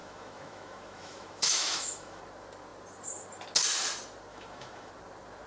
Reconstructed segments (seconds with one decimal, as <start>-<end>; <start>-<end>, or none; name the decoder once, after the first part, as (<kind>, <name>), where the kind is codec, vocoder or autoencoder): 0.0-2.2 (autoencoder, DAC-VAE); 4.3-4.9